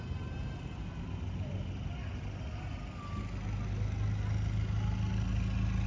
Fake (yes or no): no